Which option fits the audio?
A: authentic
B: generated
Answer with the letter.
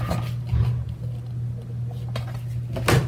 A